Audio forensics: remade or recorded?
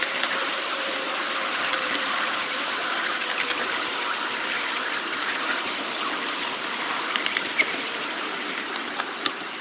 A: remade